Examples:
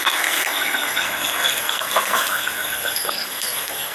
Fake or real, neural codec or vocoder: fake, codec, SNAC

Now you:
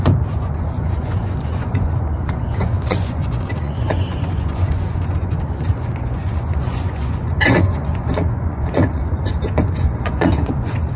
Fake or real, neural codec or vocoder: fake, vocoder, Vocos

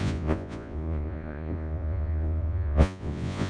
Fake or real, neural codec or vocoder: fake, vocoder, Vocos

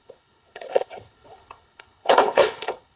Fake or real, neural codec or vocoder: fake, codec, HILCodec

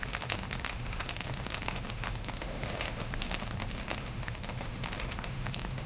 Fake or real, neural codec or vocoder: fake, autoencoder, DAC-VAE